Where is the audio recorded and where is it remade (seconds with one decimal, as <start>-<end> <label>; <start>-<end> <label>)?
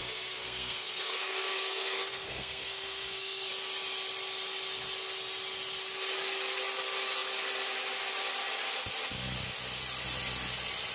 0.0-3.5 remade; 3.5-10.9 recorded